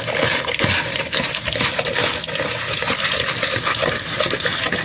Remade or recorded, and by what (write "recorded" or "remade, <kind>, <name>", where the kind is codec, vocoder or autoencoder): recorded